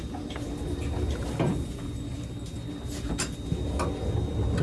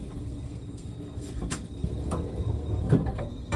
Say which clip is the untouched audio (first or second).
first